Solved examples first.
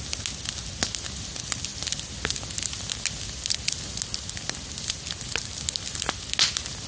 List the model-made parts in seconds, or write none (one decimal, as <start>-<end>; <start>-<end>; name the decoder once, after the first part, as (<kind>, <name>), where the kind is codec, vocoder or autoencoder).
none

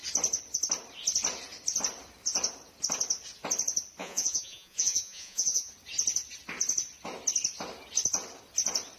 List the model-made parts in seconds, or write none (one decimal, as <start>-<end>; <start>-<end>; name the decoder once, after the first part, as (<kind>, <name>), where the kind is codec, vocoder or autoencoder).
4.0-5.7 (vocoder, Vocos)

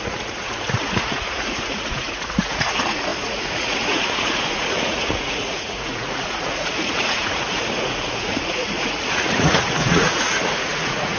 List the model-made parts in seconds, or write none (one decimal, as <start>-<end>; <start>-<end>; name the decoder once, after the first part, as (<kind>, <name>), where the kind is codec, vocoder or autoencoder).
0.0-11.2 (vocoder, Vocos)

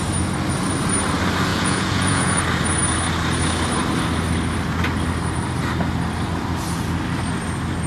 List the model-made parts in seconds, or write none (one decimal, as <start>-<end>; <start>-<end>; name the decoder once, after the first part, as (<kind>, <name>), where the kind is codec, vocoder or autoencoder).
1.5-2.4 (vocoder, Vocos)